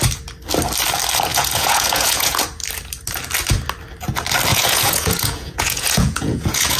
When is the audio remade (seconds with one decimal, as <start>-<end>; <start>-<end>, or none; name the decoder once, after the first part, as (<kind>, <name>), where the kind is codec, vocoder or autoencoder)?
1.3-2.4 (vocoder, Vocos); 4.5-6.8